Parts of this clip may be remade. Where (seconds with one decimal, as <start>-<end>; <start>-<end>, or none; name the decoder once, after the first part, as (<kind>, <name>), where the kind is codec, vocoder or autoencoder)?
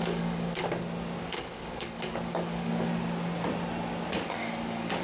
0.0-0.6 (codec, DAC); 1.2-2.9; 4.3-5.0